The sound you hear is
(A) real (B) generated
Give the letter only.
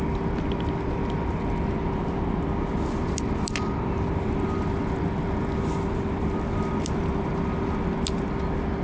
A